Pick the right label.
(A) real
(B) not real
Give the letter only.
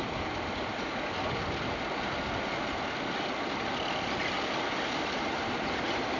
A